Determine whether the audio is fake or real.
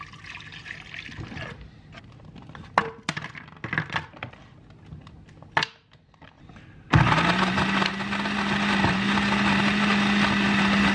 real